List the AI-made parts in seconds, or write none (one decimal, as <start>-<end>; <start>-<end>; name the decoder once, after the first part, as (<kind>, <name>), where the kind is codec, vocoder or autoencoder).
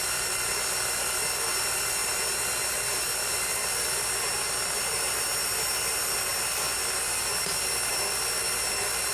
none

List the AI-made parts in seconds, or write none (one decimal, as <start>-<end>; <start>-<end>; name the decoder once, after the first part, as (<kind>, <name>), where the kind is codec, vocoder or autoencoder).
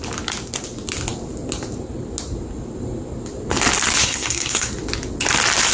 4.0-4.7 (codec, SNAC)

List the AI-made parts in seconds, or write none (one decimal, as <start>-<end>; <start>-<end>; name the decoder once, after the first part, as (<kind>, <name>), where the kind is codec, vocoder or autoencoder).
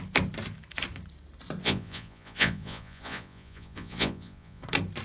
1.6-4.6 (vocoder, Vocos)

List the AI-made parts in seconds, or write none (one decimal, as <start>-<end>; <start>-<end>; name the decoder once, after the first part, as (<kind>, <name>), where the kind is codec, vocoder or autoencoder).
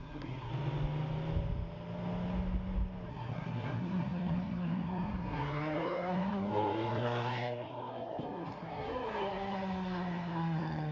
0.0-0.5 (codec, SNAC); 3.1-10.9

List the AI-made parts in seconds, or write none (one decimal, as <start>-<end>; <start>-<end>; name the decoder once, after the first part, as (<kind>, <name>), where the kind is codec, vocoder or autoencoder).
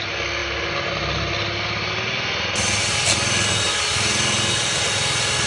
none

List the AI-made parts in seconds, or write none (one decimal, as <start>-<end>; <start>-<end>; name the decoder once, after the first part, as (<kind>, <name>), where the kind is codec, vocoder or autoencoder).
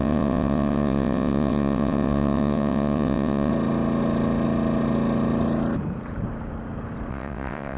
0.0-3.5 (vocoder, WaveNeXt); 7.1-7.8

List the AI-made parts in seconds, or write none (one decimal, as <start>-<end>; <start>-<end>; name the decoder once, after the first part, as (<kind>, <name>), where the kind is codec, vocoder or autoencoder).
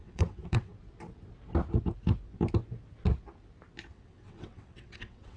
0.0-0.7 (vocoder, WaveNeXt); 3.9-5.4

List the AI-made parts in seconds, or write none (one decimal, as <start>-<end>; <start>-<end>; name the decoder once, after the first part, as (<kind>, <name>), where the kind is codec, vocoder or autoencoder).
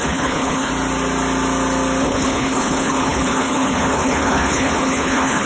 0.0-0.7 (codec, HILCodec); 2.0-5.5